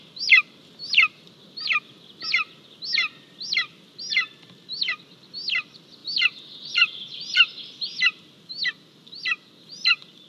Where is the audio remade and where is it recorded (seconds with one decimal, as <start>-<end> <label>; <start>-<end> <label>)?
0.0-10.3 recorded